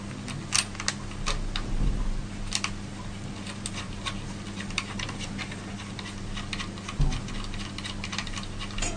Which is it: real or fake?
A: real